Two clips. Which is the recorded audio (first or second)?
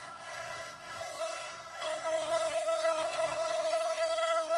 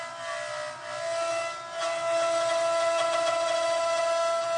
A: second